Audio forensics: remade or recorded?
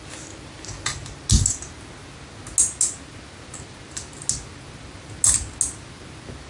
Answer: recorded